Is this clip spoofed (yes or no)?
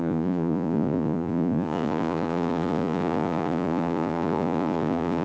yes